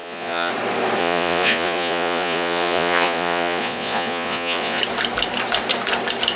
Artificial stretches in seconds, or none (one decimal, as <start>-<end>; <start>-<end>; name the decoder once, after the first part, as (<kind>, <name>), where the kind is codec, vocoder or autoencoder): 0.0-0.5 (vocoder, Vocos); 1.0-4.8